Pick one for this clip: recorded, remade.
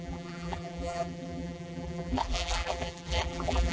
remade